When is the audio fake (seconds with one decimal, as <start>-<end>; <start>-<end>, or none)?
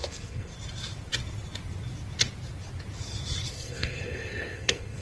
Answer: 0.0-0.5; 3.5-5.0